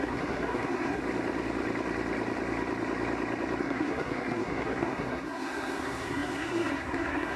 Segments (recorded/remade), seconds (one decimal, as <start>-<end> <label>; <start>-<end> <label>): 0.0-1.0 remade; 1.0-3.6 recorded; 3.6-7.4 remade